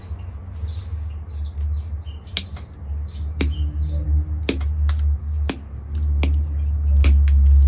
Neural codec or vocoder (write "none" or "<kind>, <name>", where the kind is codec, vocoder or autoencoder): none